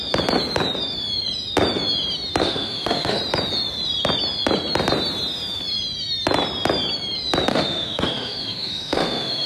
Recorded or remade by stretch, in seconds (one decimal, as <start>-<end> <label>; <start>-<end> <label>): 0.0-2.4 recorded; 2.4-3.2 remade; 3.2-7.5 recorded; 7.5-9.5 remade